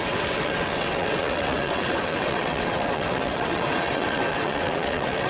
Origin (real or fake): fake